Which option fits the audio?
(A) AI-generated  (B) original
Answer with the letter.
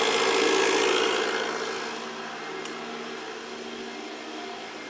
B